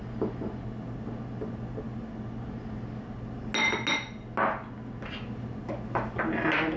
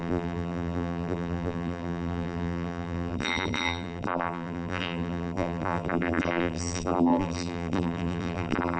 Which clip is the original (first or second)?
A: first